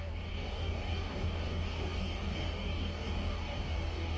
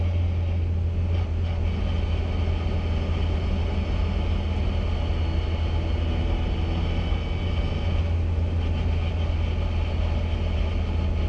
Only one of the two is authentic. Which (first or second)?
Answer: second